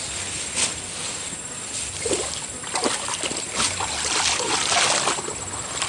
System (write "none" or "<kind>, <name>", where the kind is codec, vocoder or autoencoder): none